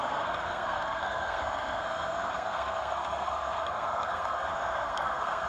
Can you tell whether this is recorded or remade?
remade